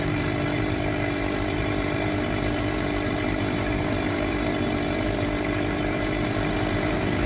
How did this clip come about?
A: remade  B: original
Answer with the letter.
A